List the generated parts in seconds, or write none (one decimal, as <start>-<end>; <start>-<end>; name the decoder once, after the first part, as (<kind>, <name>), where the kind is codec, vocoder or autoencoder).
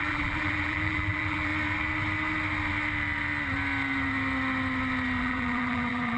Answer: 0.0-1.5 (vocoder, BigVGAN v2); 5.2-6.2